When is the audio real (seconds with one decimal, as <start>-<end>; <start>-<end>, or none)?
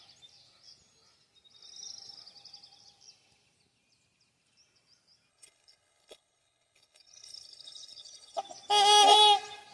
0.0-5.3; 8.4-9.7